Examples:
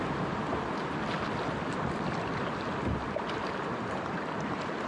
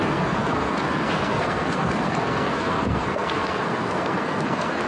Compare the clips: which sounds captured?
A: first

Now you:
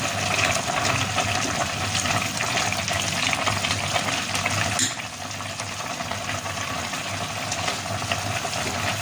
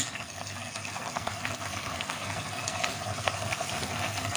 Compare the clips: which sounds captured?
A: first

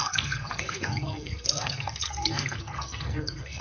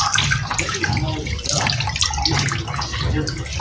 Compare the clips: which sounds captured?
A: second